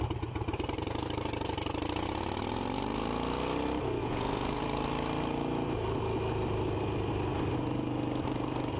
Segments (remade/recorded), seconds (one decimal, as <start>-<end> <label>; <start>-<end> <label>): 0.0-4.0 recorded; 4.0-4.6 remade; 4.6-8.8 recorded

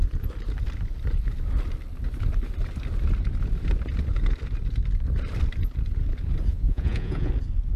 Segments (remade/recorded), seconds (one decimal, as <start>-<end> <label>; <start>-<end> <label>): 0.0-6.5 recorded; 6.5-7.3 remade; 7.3-7.8 recorded

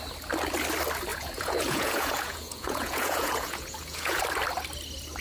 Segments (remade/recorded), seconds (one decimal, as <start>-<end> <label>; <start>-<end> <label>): 0.0-1.1 recorded; 1.1-4.2 remade; 4.2-5.2 recorded

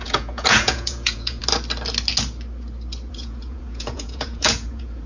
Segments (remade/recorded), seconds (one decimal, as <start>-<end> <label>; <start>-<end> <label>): 0.0-1.4 remade; 1.4-3.1 recorded; 3.1-5.1 remade

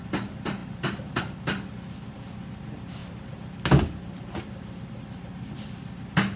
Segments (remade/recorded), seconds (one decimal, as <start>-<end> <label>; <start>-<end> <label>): 0.0-6.4 recorded

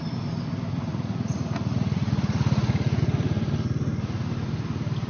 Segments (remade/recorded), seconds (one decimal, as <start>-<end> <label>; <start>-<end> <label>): 0.0-0.9 recorded; 0.9-3.0 remade; 3.0-5.1 recorded

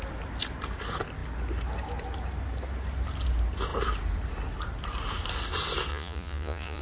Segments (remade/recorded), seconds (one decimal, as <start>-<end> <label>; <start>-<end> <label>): 0.0-5.9 recorded; 5.9-6.8 remade

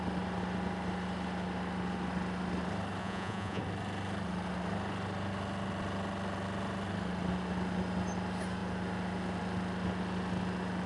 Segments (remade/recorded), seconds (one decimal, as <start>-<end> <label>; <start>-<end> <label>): 0.0-3.0 recorded; 3.0-3.6 remade; 3.6-10.9 recorded